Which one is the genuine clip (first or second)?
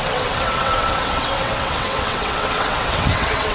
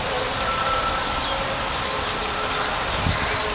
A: second